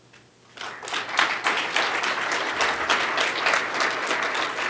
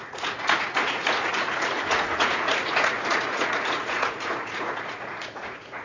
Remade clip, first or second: second